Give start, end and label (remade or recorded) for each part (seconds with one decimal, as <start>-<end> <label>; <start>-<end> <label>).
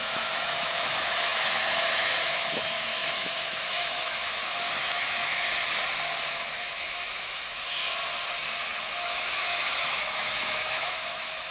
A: 0.0-5.3 remade; 5.3-6.6 recorded; 6.6-7.8 remade; 7.8-8.8 recorded; 8.8-11.5 remade